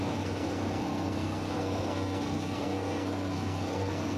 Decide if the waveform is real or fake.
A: fake